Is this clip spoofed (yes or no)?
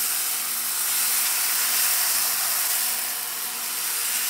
no